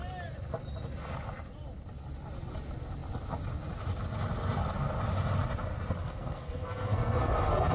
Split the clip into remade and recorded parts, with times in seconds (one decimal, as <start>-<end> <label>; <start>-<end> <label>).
0.0-6.0 recorded; 6.0-7.7 remade